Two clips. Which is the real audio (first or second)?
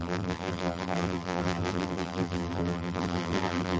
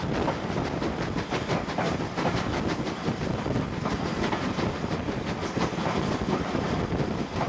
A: second